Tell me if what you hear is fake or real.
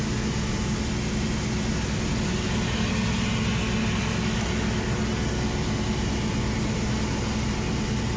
real